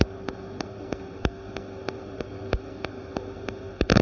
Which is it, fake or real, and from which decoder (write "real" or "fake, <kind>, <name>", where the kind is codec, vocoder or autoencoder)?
fake, codec, SNAC